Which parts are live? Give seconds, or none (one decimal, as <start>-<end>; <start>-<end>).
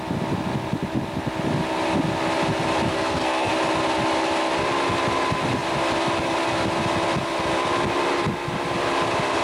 0.0-2.9; 3.5-9.4